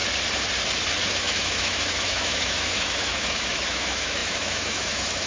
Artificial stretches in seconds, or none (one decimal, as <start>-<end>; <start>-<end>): 1.1-5.3

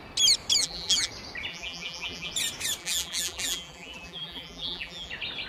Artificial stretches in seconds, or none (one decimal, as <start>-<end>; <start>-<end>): 0.6-1.1; 1.5-2.3; 2.8-5.1

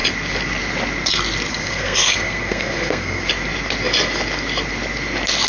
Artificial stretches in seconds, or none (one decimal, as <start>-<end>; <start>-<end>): 1.5-3.3

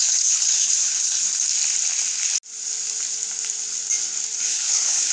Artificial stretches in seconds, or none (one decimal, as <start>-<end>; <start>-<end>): 0.0-1.3; 4.4-5.1